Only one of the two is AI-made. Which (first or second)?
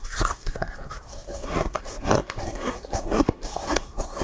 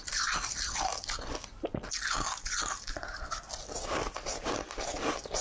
first